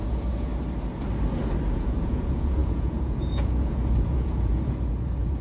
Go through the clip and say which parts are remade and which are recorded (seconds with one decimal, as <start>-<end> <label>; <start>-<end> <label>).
0.0-0.5 remade; 0.5-1.7 recorded; 1.7-5.4 remade